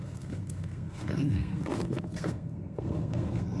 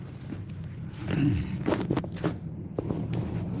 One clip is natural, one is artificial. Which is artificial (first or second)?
first